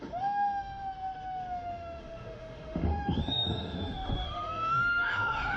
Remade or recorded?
remade